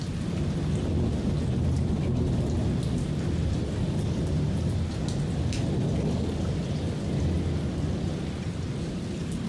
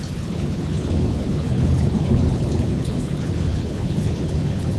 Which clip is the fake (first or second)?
second